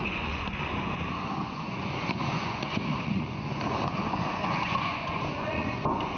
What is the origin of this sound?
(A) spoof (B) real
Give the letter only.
A